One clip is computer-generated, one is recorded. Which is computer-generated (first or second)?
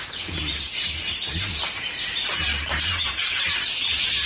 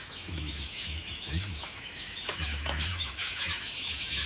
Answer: second